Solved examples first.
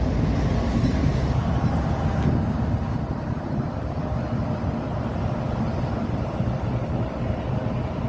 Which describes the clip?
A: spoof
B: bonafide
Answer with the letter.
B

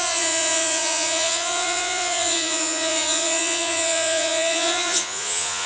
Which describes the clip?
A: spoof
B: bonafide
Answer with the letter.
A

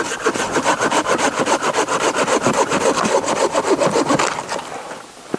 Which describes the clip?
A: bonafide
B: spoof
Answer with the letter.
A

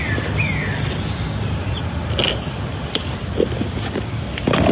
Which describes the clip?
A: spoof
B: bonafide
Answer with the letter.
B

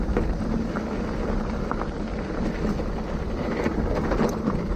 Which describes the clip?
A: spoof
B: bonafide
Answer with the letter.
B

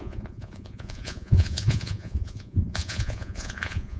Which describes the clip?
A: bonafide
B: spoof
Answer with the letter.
B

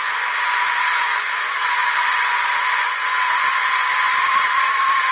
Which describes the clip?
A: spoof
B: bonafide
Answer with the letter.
A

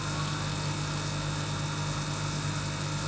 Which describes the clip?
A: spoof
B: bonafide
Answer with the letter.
B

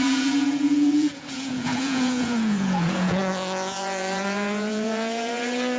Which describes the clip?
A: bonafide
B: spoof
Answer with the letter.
B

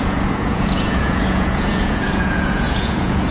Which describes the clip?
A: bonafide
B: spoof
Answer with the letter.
B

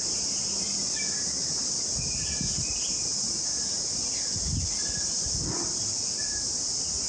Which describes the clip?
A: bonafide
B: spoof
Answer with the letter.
A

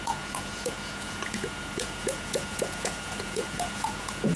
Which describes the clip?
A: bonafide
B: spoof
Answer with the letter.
B